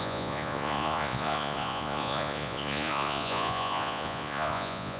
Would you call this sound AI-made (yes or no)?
yes